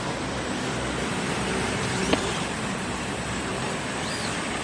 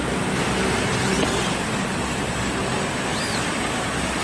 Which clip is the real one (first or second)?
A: second